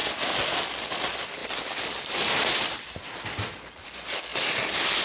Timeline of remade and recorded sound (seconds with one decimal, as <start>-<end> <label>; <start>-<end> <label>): 0.0-1.4 recorded; 1.4-3.0 remade; 3.0-5.0 recorded